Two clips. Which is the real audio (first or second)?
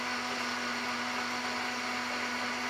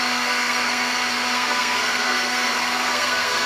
first